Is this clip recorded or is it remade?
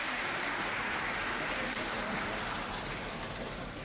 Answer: remade